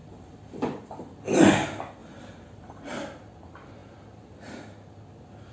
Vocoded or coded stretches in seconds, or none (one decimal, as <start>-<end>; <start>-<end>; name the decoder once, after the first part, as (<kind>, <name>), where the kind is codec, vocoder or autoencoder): 0.0-1.2 (vocoder, BigVGAN v2); 2.0-2.9